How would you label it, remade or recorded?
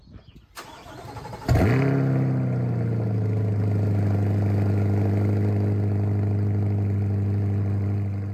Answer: recorded